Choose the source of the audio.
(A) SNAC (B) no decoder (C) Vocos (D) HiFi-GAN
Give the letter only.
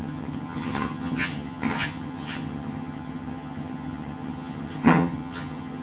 D